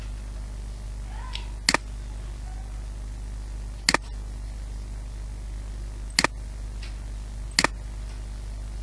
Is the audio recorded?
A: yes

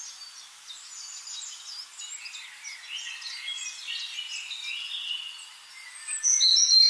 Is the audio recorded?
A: yes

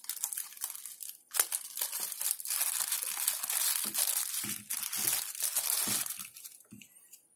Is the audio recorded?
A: yes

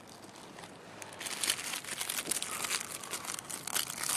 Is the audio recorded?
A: yes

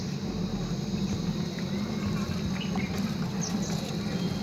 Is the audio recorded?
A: yes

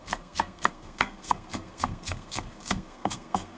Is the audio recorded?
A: no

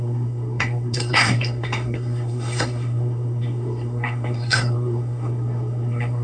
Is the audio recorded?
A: no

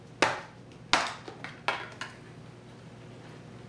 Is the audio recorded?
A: yes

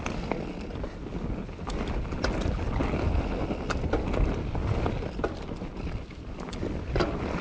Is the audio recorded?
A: yes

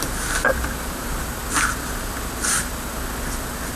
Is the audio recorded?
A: yes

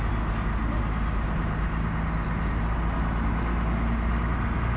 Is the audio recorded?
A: yes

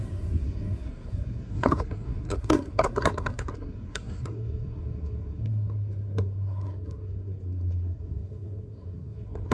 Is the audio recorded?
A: no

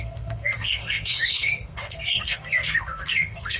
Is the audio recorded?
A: no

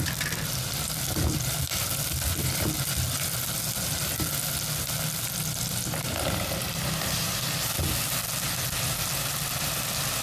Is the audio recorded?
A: yes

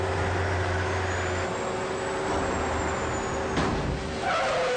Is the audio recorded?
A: yes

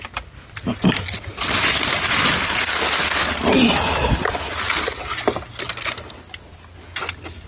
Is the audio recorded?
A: yes